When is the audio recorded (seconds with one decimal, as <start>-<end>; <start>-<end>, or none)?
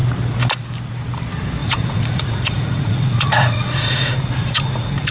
0.0-1.6